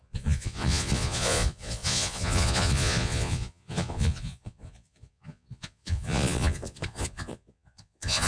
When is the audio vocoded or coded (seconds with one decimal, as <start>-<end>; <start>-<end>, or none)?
0.0-8.3